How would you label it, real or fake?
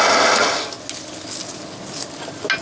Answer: real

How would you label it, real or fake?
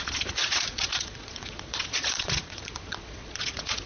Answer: fake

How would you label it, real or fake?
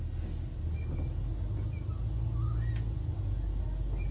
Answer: real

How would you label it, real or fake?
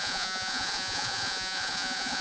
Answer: fake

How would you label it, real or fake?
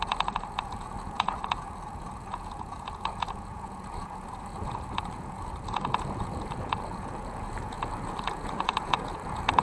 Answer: fake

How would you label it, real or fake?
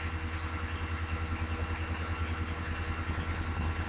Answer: real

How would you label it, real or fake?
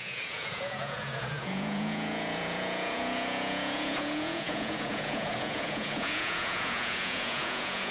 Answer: fake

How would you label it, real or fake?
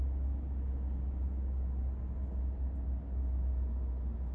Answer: real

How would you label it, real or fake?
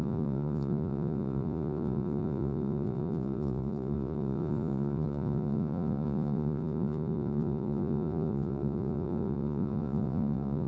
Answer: fake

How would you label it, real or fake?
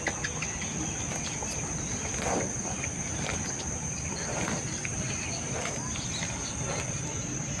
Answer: real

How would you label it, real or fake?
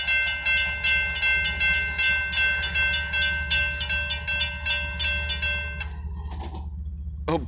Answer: real